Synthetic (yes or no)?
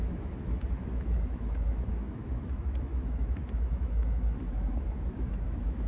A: yes